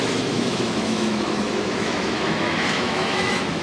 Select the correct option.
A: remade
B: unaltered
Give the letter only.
A